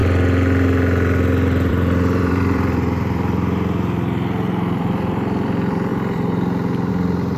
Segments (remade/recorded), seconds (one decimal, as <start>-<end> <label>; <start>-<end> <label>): 0.0-1.7 recorded; 1.7-5.9 remade; 5.9-6.9 recorded; 6.9-7.4 remade

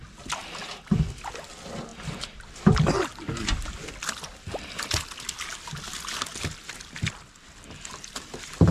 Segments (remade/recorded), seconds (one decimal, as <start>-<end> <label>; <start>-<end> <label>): 0.0-8.7 recorded

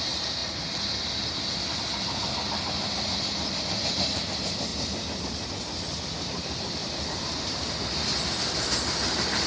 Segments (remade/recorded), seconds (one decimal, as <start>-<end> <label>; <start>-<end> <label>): 0.0-4.7 recorded; 4.7-5.5 remade; 5.5-6.8 recorded; 6.8-7.8 remade; 7.8-9.5 recorded

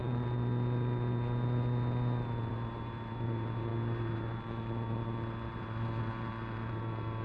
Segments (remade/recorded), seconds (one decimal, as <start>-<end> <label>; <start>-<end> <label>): 0.0-2.5 recorded; 2.5-7.2 remade

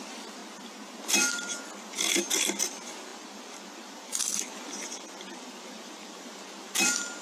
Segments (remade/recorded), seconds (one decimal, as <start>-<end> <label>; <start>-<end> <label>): 0.0-0.4 remade; 0.4-1.8 recorded; 1.8-7.2 remade